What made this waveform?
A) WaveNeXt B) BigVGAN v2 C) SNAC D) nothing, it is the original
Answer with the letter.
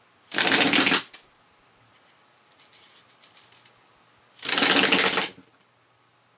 D